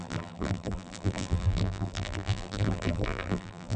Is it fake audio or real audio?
fake